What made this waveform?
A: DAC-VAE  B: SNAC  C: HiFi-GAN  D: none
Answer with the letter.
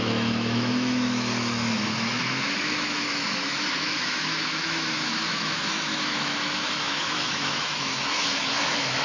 A